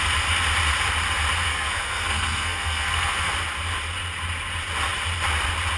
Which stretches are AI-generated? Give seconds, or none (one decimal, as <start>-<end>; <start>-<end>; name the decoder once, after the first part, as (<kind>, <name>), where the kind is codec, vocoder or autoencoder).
1.5-3.3 (codec, SNAC)